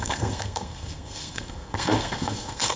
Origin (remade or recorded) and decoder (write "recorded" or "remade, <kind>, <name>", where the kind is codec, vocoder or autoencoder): remade, codec, SNAC